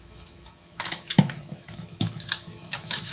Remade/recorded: remade